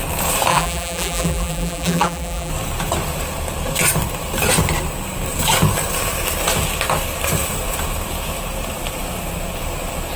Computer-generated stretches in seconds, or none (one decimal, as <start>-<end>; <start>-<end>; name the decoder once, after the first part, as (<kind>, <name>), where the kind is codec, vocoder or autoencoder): 0.5-2.5 (vocoder, BigVGAN v2)